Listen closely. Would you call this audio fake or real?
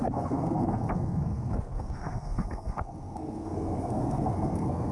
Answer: fake